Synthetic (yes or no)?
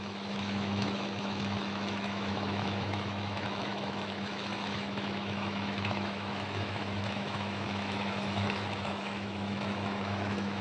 yes